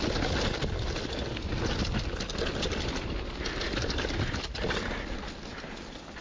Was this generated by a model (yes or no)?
no